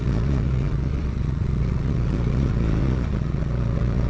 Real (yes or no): no